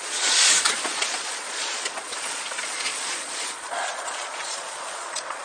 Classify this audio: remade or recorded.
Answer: remade